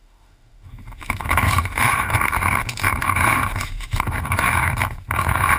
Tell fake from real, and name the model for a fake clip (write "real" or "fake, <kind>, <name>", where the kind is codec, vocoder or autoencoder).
fake, autoencoder, DAC-VAE